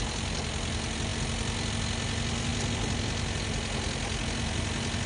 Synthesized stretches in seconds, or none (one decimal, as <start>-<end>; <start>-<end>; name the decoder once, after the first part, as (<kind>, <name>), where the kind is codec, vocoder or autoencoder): none